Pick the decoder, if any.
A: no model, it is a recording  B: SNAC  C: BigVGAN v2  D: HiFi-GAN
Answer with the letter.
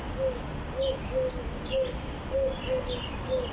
A